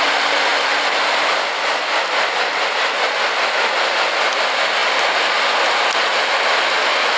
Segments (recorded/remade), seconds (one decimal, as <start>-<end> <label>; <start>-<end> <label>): 0.0-7.2 recorded